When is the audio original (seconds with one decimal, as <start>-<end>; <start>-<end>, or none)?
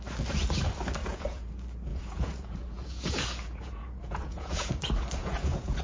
0.0-1.0; 1.5-1.9; 4.7-5.2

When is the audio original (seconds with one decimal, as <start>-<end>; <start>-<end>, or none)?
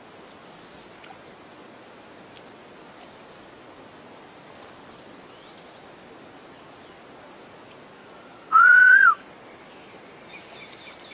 0.0-8.0; 9.2-11.1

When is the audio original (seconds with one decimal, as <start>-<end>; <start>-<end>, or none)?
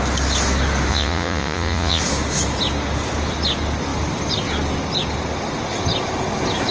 0.0-0.9; 2.0-6.7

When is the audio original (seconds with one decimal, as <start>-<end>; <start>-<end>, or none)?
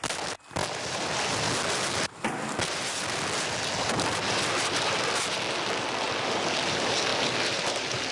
0.0-8.1